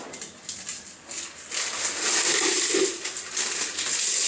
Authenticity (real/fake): real